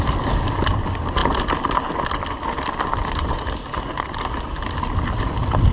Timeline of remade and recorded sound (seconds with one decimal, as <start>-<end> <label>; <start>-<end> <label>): 0.0-5.7 recorded

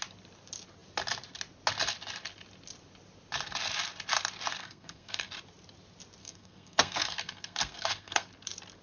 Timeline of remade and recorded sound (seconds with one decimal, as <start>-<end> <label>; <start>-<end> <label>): 0.0-4.6 recorded; 4.6-5.3 remade; 5.3-6.2 recorded; 6.2-8.3 remade; 8.3-8.8 recorded

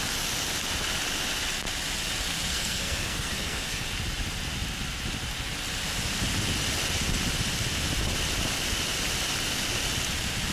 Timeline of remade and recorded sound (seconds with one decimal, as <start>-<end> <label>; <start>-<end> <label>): 0.0-2.5 recorded; 2.5-3.9 remade; 3.9-10.5 recorded

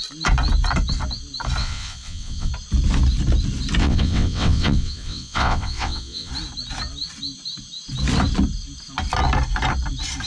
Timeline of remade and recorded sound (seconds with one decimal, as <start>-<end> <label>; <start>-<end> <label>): 0.0-1.6 recorded; 1.6-2.5 remade; 2.5-3.8 recorded; 3.8-6.3 remade; 6.3-10.3 recorded

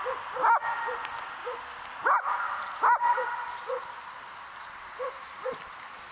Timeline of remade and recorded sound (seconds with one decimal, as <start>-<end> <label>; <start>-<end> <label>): 0.0-6.1 recorded

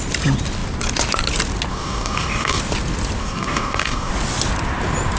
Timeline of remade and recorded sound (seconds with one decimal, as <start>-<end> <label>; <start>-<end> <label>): 0.0-1.7 recorded; 1.7-2.6 remade; 2.6-3.2 recorded; 3.2-4.1 remade; 4.1-5.2 recorded

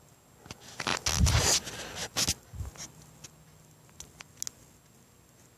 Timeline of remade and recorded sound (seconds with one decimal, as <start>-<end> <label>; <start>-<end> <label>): 0.0-5.6 recorded

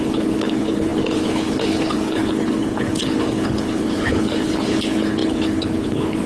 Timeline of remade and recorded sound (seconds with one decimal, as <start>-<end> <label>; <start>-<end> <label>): 0.0-6.3 remade